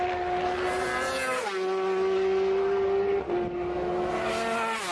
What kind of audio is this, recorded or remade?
recorded